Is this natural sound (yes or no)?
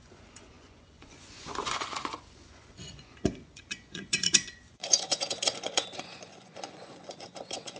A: no